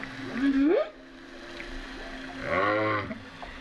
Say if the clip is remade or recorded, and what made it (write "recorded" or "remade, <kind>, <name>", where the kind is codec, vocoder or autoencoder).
recorded